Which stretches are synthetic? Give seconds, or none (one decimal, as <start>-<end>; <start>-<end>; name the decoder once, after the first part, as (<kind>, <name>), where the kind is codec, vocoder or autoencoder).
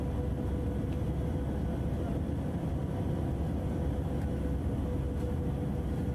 none